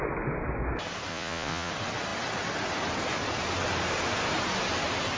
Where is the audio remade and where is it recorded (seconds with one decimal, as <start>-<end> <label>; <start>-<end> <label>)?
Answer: 0.0-1.1 recorded; 1.1-1.7 remade; 1.7-5.2 recorded